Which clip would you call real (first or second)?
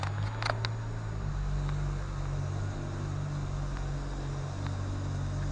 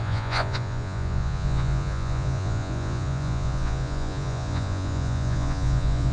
first